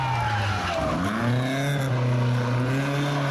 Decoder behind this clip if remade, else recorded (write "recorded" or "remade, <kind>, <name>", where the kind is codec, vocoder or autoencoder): recorded